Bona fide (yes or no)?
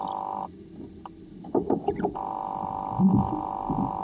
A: yes